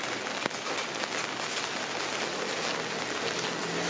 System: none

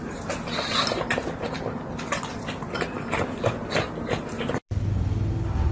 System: none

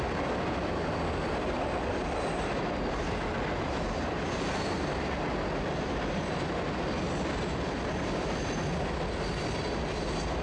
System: none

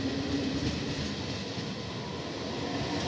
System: none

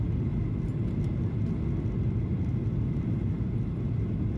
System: none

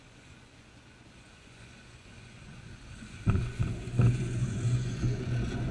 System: vocoder, Vocos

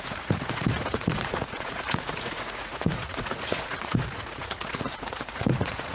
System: vocoder, Vocos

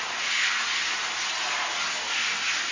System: none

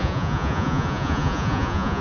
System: vocoder, Vocos